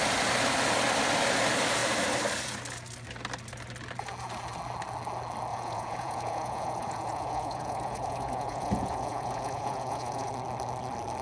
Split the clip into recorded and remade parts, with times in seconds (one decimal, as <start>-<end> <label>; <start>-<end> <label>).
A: 0.0-5.5 recorded; 5.5-10.3 remade; 10.3-11.2 recorded